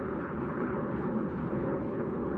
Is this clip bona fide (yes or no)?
no